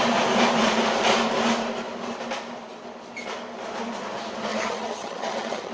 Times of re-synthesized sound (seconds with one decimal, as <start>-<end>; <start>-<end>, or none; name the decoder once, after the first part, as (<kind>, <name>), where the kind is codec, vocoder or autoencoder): 4.5-5.7 (vocoder, HiFi-GAN)